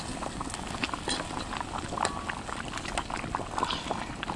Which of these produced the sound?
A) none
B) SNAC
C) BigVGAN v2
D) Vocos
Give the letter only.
A